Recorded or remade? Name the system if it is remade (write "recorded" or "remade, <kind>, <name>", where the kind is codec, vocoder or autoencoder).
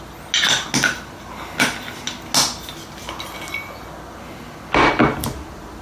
recorded